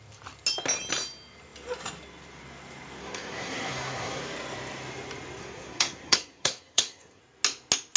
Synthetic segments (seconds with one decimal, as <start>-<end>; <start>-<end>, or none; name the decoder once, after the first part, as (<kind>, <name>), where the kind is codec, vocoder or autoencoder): 3.0-4.2 (codec, SNAC); 5.4-7.2